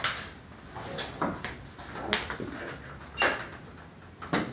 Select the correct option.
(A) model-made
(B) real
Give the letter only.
B